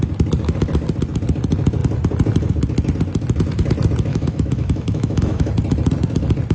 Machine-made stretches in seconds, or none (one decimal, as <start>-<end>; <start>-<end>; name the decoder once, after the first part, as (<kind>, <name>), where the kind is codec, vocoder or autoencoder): 4.1-5.5 (autoencoder, DAC-VAE)